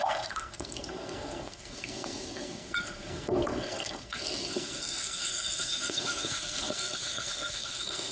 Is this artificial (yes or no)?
yes